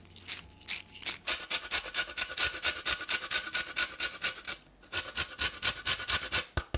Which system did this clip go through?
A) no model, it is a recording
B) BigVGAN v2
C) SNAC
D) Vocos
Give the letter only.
A